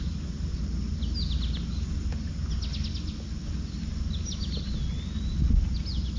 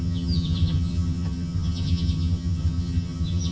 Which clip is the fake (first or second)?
second